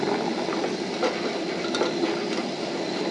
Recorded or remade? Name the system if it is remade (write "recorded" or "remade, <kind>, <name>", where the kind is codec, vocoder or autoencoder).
recorded